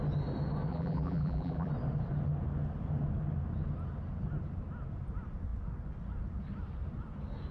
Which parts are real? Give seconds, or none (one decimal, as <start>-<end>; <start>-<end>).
0.0-0.7; 1.7-7.5